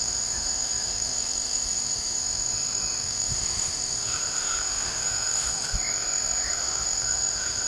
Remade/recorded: remade